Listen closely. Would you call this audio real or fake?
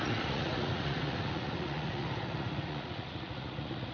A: fake